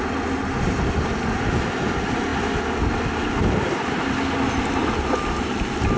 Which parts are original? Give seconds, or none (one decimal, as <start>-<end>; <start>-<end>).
0.0-6.0